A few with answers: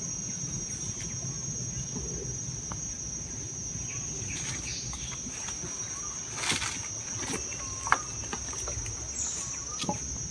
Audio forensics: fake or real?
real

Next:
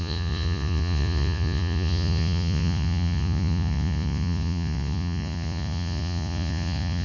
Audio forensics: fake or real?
fake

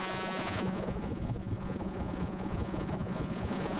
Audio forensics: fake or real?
fake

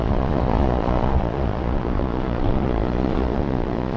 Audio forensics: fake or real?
fake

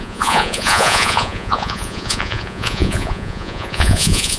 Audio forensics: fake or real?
fake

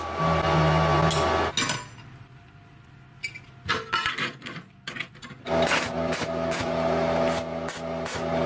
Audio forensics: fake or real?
real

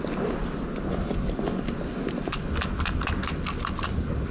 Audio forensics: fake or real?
real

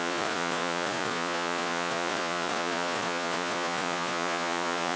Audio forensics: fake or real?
fake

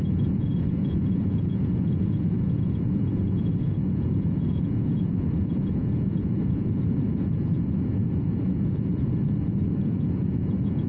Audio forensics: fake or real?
fake